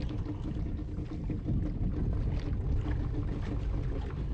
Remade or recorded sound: recorded